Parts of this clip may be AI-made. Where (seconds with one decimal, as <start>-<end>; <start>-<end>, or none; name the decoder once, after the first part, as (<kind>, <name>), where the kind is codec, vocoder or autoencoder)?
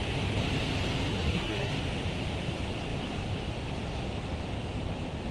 1.1-1.7 (codec, SNAC)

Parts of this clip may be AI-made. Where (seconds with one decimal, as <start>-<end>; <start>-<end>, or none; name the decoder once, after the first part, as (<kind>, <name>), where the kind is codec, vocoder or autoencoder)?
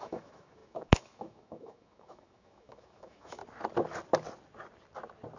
0.0-3.4 (autoencoder, DAC-VAE)